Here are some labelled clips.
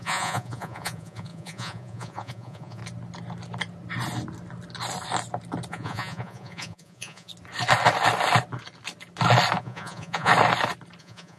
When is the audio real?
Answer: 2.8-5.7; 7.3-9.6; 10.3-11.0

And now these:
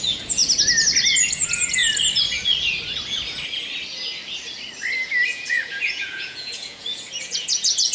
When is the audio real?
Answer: 0.4-1.2; 1.8-5.3

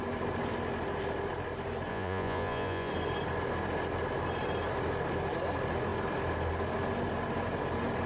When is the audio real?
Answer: 0.0-1.9; 2.9-8.1

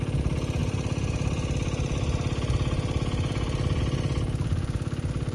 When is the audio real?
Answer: 0.0-5.3

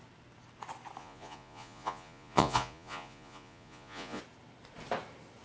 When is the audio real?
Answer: 0.0-1.0; 4.2-5.4

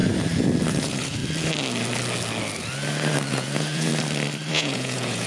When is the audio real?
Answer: 0.0-0.7; 1.2-3.3; 3.9-4.5

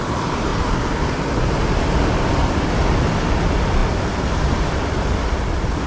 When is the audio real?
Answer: 0.0-5.9